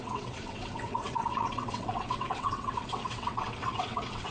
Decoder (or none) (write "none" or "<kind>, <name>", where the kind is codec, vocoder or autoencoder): vocoder, WaveNeXt